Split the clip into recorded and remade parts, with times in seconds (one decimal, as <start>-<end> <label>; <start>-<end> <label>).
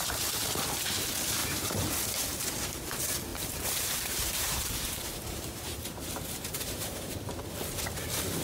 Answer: 0.0-1.4 recorded; 1.4-1.9 remade; 1.9-3.3 recorded; 3.3-7.4 remade; 7.4-8.4 recorded